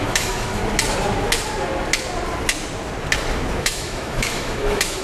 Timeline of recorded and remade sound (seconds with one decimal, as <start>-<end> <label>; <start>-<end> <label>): 0.0-0.6 remade; 0.6-3.6 recorded; 3.6-5.0 remade